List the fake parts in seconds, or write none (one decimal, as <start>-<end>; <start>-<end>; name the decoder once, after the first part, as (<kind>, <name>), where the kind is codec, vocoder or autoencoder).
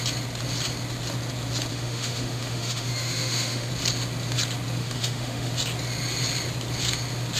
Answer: 1.7-3.7 (autoencoder, DAC-VAE); 4.8-5.5